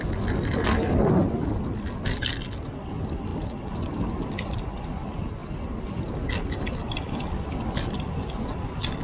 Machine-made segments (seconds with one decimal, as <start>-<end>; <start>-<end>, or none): none